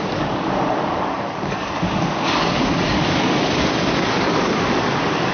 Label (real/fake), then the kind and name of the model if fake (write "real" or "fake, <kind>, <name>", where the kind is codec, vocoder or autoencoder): fake, codec, DAC